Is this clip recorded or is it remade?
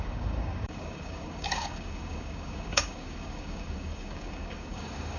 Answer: remade